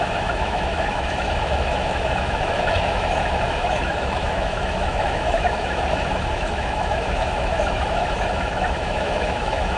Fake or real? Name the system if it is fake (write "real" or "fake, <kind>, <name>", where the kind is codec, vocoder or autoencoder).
fake, autoencoder, DAC-VAE